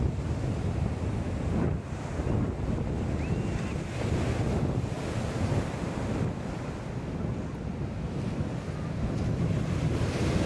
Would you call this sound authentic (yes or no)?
yes